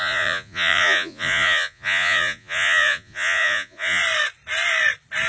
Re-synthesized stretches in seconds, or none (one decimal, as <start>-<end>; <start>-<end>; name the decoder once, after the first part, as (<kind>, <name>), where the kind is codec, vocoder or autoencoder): 0.0-4.0 (vocoder, Vocos)